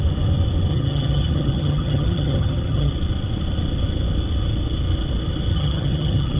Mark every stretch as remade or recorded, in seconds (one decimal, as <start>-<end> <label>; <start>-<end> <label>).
0.0-0.7 recorded; 0.7-2.9 remade; 2.9-5.5 recorded; 5.5-6.4 remade